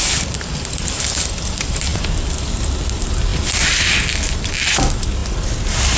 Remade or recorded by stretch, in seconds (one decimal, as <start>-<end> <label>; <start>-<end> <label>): 0.0-6.0 recorded